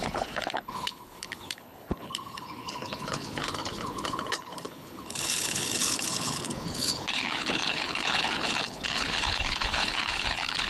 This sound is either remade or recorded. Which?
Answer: remade